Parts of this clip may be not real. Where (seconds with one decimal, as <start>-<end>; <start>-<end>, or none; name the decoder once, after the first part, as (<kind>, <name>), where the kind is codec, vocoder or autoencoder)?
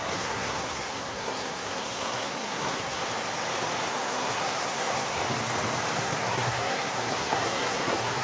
0.0-3.0 (codec, SNAC); 3.9-5.2; 6.0-8.2